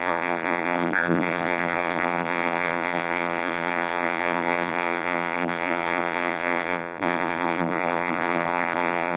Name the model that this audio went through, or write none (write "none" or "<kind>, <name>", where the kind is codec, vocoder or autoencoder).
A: vocoder, BigVGAN v2